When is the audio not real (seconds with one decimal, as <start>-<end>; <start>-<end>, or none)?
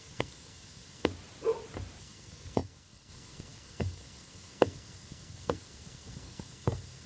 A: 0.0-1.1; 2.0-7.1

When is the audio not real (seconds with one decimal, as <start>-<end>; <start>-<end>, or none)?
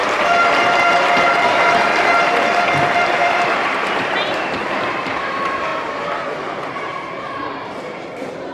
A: 3.1-8.5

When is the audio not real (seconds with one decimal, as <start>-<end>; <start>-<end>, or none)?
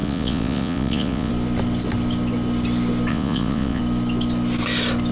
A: 0.0-1.3; 3.1-3.8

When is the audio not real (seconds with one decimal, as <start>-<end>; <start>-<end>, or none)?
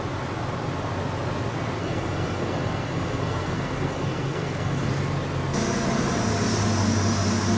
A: 1.8-4.9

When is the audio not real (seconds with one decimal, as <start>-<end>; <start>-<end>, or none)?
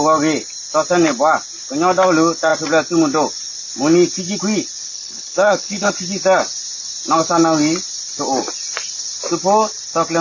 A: 4.9-5.9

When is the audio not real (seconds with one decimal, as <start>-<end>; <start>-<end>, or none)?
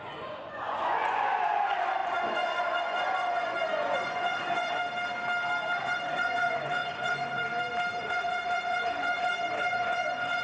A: 0.0-4.8; 5.8-7.4; 8.0-10.4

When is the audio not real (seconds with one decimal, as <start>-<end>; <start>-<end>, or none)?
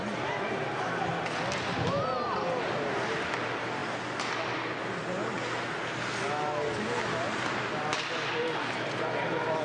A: none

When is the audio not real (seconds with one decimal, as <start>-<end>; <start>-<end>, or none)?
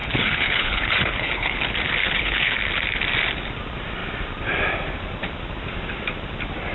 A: 0.0-1.6; 2.0-2.5